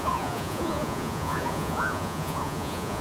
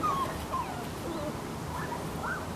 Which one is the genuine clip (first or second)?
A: second